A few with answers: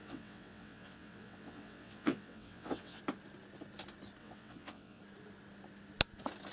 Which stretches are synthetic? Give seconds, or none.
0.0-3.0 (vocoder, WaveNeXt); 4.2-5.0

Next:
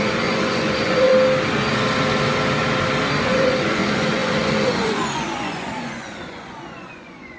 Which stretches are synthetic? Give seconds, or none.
0.0-1.1 (vocoder, Vocos); 3.2-7.4

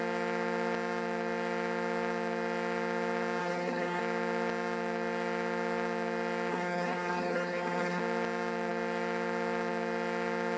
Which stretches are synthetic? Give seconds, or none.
3.4-4.0 (codec, SNAC); 6.5-8.0

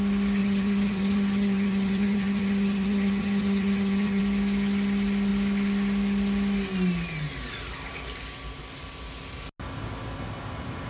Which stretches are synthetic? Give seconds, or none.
0.4-4.2 (vocoder, HiFi-GAN)